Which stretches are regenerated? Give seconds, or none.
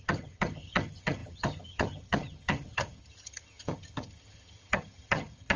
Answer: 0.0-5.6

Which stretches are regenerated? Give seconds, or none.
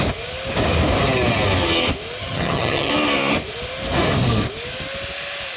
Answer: 2.2-2.9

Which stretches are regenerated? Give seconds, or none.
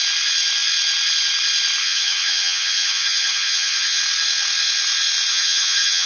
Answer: 1.8-4.0; 5.3-6.1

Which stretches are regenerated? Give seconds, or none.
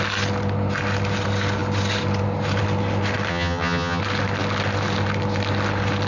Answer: 3.3-4.0